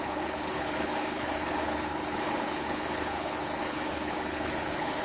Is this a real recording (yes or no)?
no